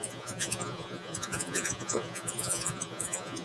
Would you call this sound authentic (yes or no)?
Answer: no